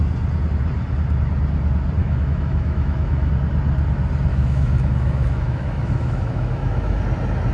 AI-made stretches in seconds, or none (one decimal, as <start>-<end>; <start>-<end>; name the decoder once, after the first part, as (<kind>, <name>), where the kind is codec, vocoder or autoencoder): 2.0-3.3 (autoencoder, DAC-VAE); 4.3-7.0